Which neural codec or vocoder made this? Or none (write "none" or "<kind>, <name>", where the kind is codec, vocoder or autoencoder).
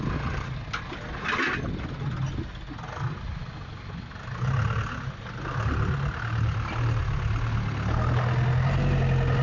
none